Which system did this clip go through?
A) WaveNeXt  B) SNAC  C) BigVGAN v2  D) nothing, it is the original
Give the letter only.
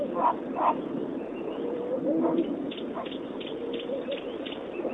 D